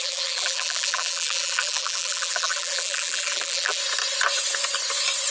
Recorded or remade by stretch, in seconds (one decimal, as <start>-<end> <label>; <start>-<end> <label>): 0.0-3.8 remade; 3.8-5.3 recorded